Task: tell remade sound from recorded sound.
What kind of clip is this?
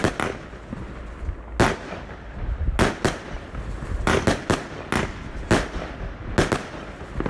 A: recorded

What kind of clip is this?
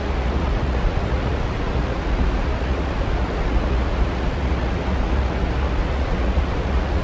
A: remade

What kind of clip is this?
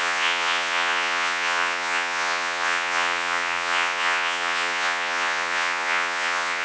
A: remade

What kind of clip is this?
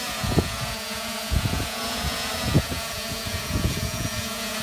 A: remade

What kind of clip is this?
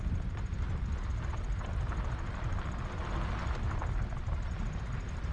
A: recorded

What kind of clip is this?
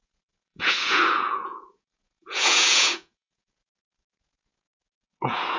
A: remade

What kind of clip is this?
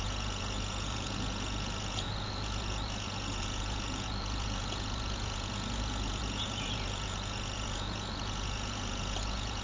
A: remade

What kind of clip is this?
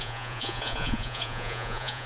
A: remade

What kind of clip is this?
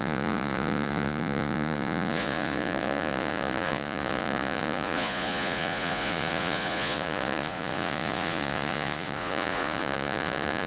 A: remade